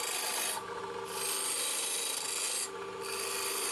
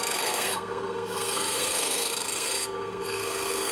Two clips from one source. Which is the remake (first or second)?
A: second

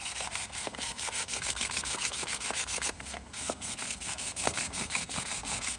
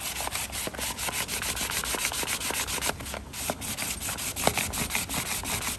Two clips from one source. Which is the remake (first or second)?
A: first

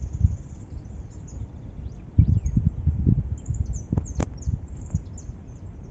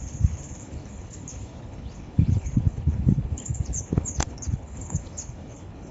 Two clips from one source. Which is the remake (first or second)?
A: second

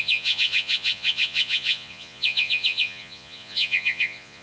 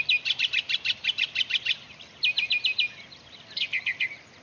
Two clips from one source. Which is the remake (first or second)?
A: first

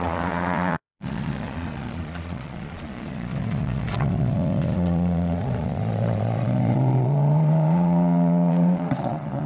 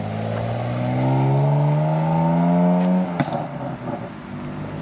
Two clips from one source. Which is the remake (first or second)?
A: first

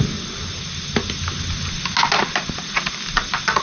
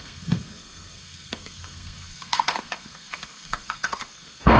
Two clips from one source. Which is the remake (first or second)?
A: second